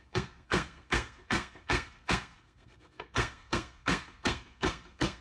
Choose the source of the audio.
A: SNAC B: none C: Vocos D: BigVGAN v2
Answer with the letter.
A